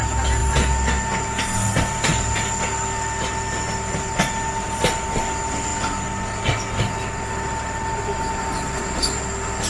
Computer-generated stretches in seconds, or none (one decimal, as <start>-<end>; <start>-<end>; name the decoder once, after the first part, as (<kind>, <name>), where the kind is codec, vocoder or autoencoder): none